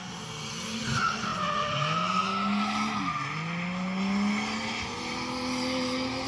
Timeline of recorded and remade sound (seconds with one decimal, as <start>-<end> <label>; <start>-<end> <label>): 0.0-6.3 recorded

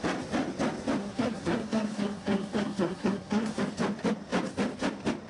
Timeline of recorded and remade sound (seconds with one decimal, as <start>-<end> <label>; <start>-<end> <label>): 0.0-1.0 recorded; 1.0-3.6 remade; 3.6-5.3 recorded

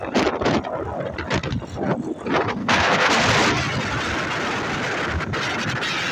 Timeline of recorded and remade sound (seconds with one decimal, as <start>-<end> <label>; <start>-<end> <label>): 0.0-2.6 recorded; 2.6-3.1 remade; 3.1-6.1 recorded

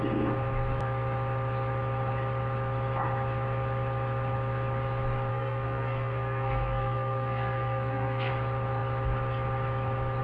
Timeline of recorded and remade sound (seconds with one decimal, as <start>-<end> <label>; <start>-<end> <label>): 0.0-5.3 recorded; 5.3-8.3 remade; 8.3-10.2 recorded